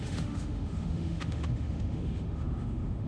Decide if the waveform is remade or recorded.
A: remade